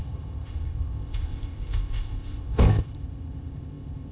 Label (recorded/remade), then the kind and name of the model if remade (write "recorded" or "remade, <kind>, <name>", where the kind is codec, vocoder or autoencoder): remade, codec, ZipCodec